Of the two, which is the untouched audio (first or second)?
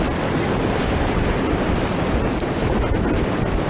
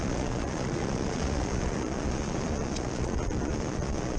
first